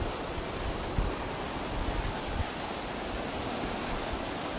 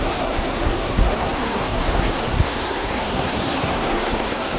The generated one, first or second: second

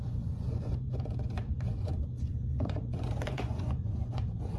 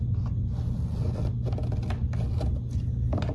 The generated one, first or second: first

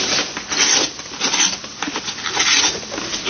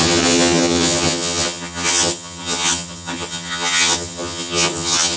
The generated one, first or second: second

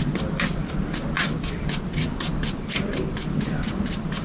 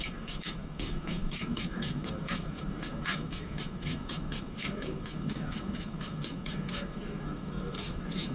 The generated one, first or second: second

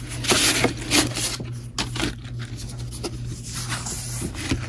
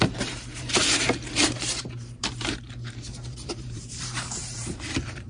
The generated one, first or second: second